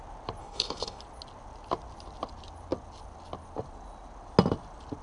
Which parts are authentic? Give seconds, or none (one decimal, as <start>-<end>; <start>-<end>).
0.0-0.4; 1.0-5.0